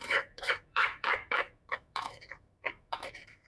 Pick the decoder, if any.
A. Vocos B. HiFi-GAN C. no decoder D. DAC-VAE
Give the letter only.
D